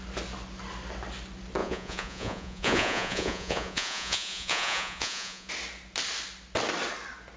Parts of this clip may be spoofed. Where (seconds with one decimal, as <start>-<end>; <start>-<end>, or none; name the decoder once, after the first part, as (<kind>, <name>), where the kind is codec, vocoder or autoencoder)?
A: 1.6-5.5 (vocoder, Vocos)